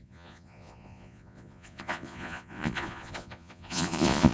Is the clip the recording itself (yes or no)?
no